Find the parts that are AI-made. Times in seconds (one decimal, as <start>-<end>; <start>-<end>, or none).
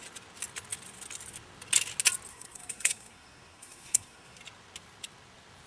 2.3-4.4